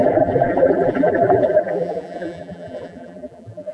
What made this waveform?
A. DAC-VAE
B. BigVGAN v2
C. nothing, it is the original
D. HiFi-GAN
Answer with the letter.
B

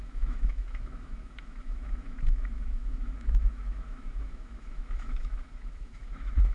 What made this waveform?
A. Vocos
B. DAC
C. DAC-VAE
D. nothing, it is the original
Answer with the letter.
C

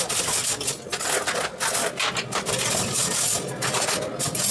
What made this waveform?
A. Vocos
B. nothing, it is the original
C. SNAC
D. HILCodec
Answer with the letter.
B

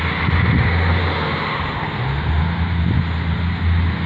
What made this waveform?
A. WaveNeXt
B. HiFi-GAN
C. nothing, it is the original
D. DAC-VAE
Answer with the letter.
C